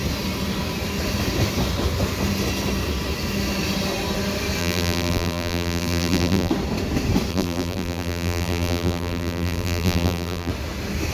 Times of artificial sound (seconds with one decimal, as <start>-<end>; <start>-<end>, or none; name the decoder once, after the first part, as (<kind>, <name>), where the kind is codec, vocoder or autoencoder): 4.6-6.5 (vocoder, BigVGAN v2); 7.3-10.5